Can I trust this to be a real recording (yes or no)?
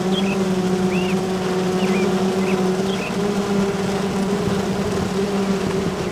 yes